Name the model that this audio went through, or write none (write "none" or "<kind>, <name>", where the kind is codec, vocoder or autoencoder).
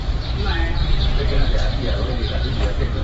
vocoder, BigVGAN v2